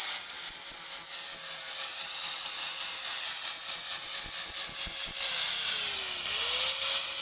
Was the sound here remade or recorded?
recorded